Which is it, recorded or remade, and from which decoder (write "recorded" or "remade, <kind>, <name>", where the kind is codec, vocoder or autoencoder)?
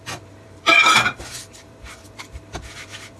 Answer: remade, vocoder, BigVGAN v2